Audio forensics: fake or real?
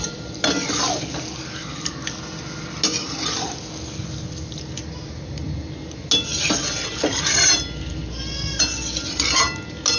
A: real